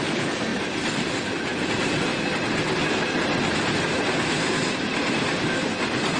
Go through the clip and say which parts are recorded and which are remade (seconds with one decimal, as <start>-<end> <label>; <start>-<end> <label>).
0.0-6.2 recorded